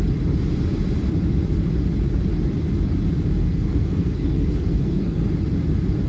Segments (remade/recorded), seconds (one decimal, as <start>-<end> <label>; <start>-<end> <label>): 0.0-3.4 recorded; 3.4-5.2 remade; 5.2-6.1 recorded